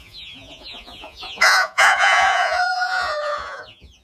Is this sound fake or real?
fake